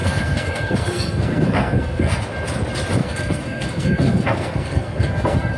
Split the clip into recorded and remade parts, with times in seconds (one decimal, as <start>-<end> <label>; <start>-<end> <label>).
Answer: 0.0-2.2 remade; 2.2-3.0 recorded; 3.0-5.6 remade